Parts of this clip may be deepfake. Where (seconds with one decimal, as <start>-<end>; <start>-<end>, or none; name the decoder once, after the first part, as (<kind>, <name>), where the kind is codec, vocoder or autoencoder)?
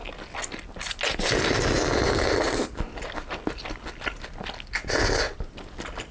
none